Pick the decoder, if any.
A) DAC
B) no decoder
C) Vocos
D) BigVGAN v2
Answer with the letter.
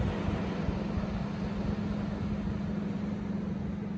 B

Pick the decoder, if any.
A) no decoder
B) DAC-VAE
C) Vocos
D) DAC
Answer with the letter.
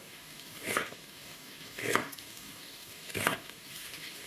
D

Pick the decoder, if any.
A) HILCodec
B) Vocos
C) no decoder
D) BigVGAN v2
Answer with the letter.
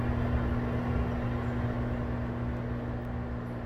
C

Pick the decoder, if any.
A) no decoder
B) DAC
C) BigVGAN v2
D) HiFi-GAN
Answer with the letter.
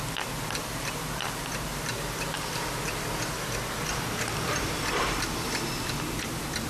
C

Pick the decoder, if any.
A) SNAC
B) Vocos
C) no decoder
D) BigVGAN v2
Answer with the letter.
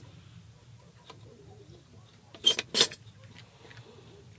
C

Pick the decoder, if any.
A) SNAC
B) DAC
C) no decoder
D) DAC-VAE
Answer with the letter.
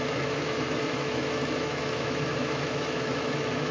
D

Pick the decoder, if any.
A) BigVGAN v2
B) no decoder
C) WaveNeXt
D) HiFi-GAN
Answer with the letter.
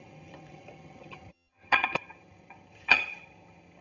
D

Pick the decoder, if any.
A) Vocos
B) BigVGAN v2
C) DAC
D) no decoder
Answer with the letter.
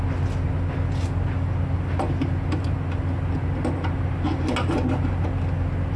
D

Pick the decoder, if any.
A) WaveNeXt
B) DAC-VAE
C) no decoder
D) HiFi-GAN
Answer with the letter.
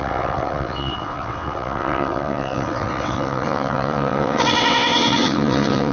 A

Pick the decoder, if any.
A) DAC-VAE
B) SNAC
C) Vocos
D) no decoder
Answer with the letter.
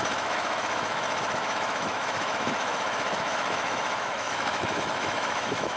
A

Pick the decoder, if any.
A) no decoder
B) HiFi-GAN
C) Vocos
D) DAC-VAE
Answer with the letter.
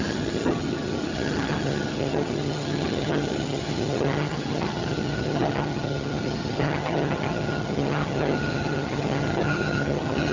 B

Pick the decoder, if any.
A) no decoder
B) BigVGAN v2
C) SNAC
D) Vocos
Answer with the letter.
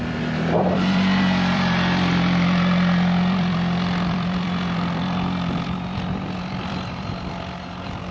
B